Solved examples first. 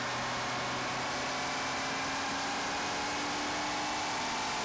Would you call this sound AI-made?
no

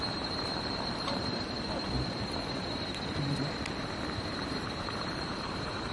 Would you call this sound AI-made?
yes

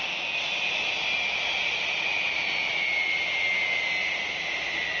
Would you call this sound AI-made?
no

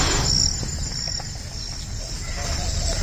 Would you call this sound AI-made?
no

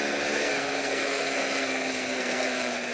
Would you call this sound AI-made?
yes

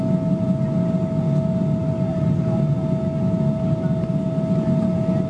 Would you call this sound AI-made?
no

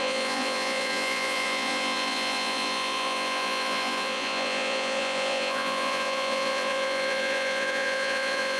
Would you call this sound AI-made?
yes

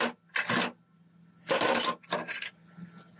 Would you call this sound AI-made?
no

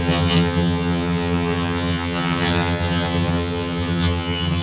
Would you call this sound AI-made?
yes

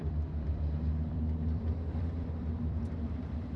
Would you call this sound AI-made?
yes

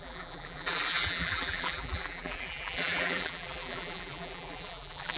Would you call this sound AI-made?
yes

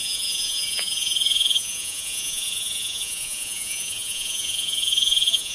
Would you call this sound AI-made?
yes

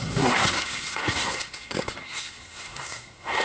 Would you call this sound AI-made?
yes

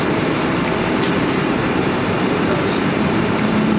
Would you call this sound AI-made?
yes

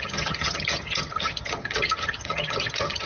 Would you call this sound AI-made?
yes